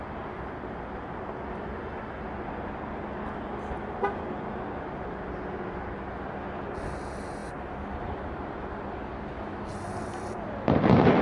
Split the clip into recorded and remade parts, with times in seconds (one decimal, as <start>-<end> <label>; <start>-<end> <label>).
0.0-11.2 recorded